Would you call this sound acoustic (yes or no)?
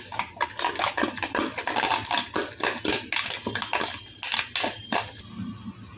yes